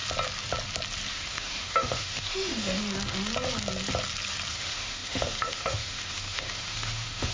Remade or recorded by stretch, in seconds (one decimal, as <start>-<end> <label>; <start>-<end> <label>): 0.0-1.1 recorded; 1.1-2.8 remade; 2.8-4.5 recorded; 4.5-7.3 remade